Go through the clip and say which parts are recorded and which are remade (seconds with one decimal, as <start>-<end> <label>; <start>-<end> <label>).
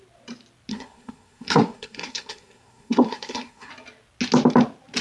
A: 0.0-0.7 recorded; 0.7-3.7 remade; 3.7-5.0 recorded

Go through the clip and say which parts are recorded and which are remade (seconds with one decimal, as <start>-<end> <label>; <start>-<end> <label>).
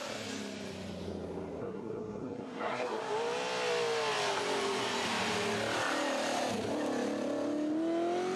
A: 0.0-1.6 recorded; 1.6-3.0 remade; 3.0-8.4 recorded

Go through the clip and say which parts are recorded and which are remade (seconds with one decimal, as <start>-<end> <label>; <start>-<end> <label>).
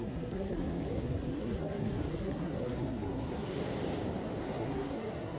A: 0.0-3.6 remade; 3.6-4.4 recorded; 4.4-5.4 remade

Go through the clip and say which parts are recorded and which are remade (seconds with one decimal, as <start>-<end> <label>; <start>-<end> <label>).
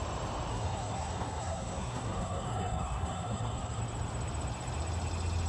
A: 0.0-0.5 recorded; 0.5-3.8 remade; 3.8-5.5 recorded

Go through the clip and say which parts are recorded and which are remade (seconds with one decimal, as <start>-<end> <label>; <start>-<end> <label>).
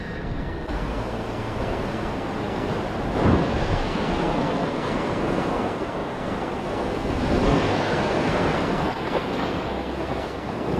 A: 0.0-2.7 remade; 2.7-3.3 recorded; 3.3-10.8 remade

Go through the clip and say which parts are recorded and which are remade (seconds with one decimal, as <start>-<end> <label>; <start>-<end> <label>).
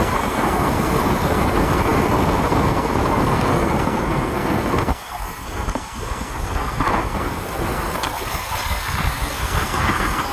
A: 0.0-10.3 remade